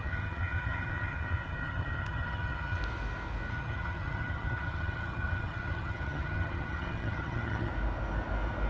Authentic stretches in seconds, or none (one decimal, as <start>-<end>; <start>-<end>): 2.8-3.5; 7.7-8.7